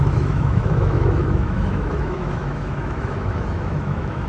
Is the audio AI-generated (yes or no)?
yes